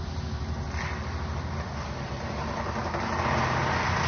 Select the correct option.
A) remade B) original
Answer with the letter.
B